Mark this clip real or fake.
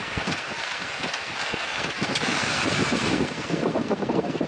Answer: fake